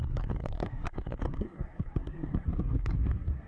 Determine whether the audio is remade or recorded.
remade